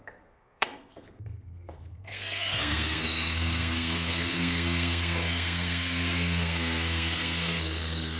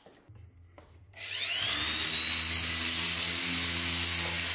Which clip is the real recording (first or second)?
second